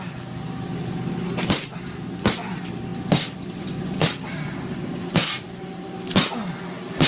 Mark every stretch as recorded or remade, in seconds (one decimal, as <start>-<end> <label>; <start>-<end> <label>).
0.0-2.9 recorded; 2.9-3.6 remade; 3.6-7.1 recorded